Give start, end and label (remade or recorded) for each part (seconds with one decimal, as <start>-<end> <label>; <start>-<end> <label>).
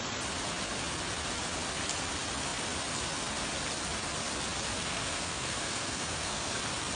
0.0-4.7 recorded; 4.7-6.6 remade; 6.6-7.0 recorded